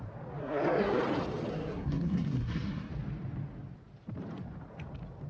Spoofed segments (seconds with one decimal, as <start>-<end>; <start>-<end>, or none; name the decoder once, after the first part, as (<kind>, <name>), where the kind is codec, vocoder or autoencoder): 0.4-1.0 (codec, SNAC); 1.5-2.9